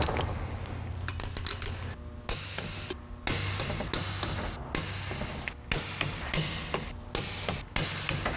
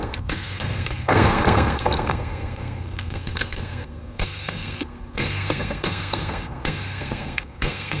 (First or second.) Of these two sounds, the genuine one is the first